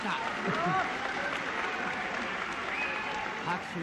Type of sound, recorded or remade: recorded